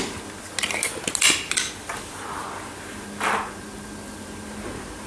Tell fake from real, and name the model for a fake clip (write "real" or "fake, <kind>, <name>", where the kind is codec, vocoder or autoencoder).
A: real